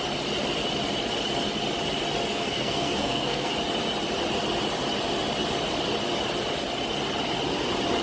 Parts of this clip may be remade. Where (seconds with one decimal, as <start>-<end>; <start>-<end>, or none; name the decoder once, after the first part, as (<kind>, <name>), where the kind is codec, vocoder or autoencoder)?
2.3-3.5 (codec, SNAC)